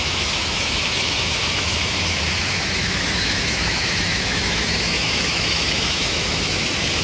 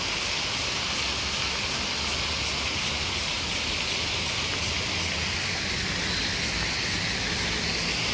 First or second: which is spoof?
first